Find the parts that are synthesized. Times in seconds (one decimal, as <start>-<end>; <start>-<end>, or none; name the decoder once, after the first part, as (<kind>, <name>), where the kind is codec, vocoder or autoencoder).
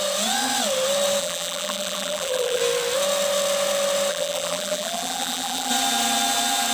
1.2-2.6 (vocoder, BigVGAN v2); 4.1-5.7